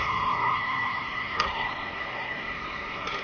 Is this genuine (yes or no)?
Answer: no